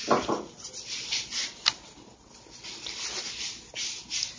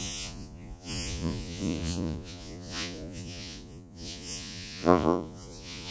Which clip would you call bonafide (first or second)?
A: first